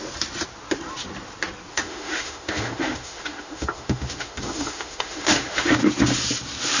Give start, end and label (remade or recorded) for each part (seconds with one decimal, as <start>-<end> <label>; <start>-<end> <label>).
0.0-1.7 recorded; 1.7-5.8 remade; 5.8-6.8 recorded